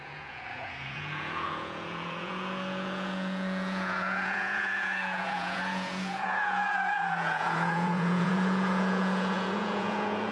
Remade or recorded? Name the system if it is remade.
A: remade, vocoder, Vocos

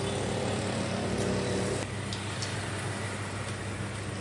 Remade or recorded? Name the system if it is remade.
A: recorded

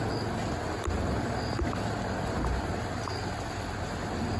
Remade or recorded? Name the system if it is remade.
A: recorded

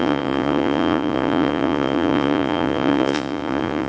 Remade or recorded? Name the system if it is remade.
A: remade, vocoder, Vocos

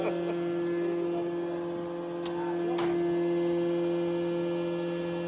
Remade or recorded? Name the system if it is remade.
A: recorded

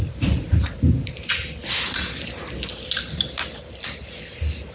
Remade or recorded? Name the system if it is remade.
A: recorded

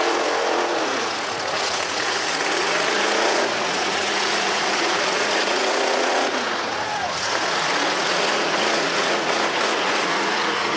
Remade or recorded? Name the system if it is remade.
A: remade, vocoder, Vocos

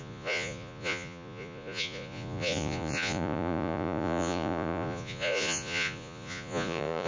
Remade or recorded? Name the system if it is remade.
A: remade, vocoder, Vocos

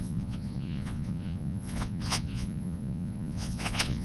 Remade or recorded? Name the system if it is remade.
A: remade, vocoder, Vocos